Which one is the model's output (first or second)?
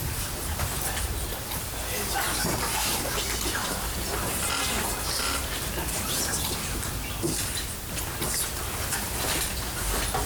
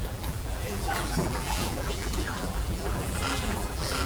second